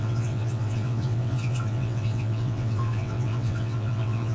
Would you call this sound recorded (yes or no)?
no